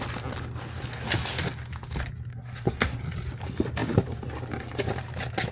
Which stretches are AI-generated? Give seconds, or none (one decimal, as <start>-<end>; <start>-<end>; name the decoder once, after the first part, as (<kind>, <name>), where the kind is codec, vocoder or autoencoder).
2.3-3.0 (codec, SNAC)